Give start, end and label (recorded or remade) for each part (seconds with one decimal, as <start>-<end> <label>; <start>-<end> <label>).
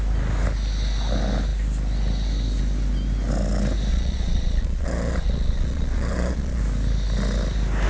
0.0-3.9 recorded; 3.9-6.6 remade; 6.6-7.9 recorded